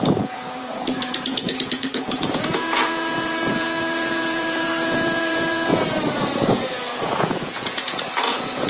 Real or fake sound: fake